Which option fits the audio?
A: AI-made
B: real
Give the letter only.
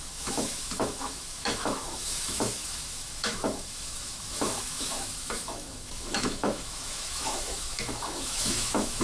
A